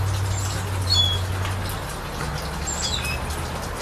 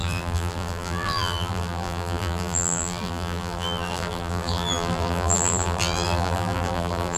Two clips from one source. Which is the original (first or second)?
first